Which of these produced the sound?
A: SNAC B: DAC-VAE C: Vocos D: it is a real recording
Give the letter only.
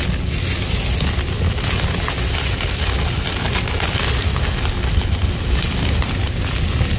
D